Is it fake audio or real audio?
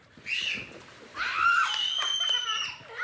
real